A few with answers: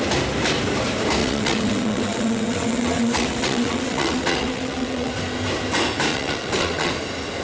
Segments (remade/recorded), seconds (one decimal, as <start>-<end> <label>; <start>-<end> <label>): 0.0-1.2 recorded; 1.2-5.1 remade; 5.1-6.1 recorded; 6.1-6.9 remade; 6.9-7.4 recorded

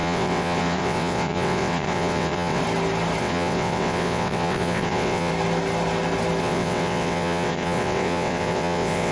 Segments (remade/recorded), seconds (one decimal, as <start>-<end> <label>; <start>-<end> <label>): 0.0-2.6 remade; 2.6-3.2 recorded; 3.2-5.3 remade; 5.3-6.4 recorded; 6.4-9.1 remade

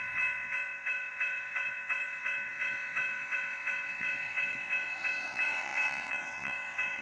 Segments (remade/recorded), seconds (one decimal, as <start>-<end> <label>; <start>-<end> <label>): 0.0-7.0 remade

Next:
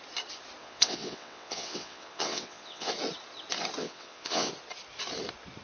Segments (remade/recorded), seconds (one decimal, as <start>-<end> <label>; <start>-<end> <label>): 0.0-0.6 recorded; 0.6-2.9 remade; 2.9-3.8 recorded; 3.8-4.5 remade; 4.5-5.6 recorded

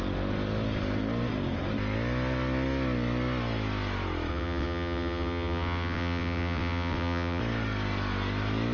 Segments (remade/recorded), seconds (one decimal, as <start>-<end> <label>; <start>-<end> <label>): 0.0-4.3 recorded; 4.3-7.4 remade; 7.4-8.7 recorded